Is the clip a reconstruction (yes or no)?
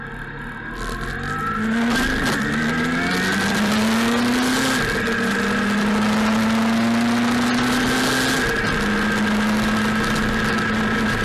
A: no